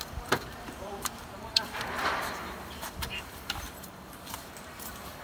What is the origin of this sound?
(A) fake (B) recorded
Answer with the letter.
A